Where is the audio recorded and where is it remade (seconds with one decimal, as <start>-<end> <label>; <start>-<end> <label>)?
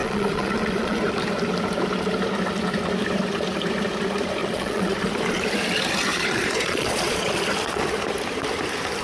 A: 0.0-1.0 remade; 1.0-4.4 recorded; 4.4-5.1 remade; 5.1-6.1 recorded; 6.1-7.3 remade; 7.3-9.0 recorded